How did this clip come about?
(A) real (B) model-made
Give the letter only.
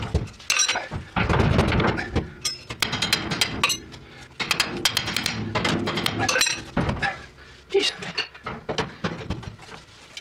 A